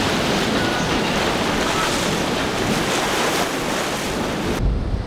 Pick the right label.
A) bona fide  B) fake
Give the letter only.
A